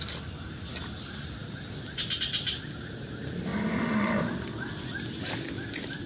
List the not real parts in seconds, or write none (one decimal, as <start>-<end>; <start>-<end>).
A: 1.4-2.2; 3.5-4.2